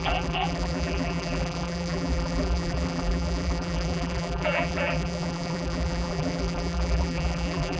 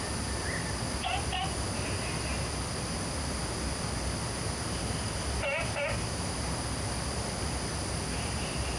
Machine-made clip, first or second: first